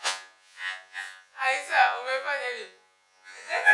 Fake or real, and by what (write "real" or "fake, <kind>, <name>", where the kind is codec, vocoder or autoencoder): fake, vocoder, Vocos